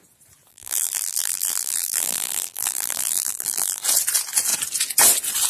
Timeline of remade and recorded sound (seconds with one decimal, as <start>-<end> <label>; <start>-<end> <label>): 0.0-0.5 recorded; 0.5-3.8 remade; 3.8-5.5 recorded